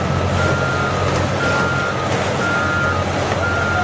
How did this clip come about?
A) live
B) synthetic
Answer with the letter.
A